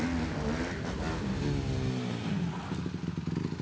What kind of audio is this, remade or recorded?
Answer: recorded